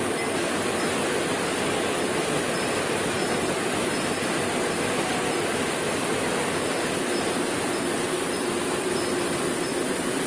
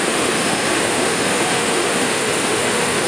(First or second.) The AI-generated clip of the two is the second